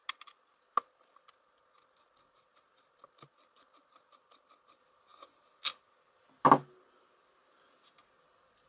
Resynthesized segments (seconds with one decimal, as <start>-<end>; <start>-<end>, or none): none